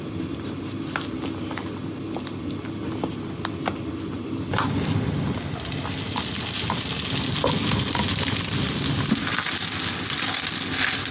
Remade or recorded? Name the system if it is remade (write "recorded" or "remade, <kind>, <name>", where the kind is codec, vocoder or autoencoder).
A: recorded